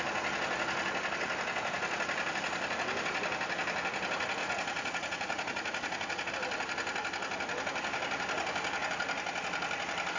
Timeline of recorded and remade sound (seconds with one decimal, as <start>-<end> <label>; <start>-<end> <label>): 0.0-4.4 recorded; 4.4-6.3 remade; 6.3-10.2 recorded